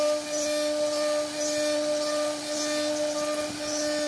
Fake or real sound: real